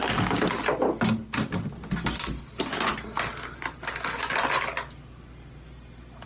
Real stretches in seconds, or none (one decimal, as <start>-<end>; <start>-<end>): 0.0-6.3